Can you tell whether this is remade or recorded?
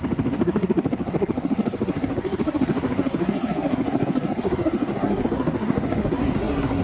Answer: remade